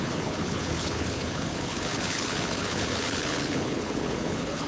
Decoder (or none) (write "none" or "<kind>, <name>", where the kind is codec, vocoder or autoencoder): codec, HILCodec